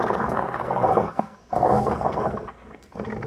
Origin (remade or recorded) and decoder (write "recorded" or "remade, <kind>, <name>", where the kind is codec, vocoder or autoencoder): remade, codec, SNAC